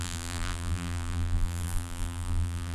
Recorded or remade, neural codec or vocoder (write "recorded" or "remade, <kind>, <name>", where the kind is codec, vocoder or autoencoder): remade, vocoder, BigVGAN v2